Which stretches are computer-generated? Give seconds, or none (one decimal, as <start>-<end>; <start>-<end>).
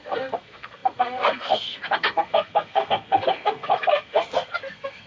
0.0-5.1